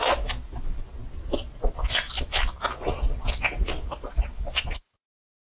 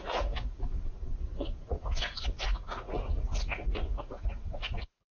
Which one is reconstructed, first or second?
second